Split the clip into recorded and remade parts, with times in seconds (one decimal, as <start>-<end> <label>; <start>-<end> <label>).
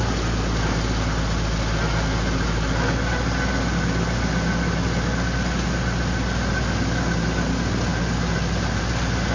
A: 0.0-9.3 recorded